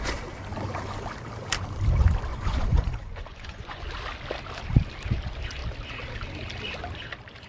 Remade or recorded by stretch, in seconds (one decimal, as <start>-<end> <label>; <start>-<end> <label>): 0.0-2.3 recorded; 2.3-3.8 remade; 3.8-7.5 recorded